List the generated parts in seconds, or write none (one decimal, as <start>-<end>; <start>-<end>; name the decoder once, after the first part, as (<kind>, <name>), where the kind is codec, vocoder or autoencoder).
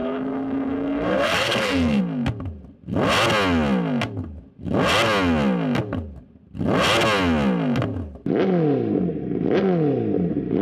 0.0-2.0 (codec, SNAC)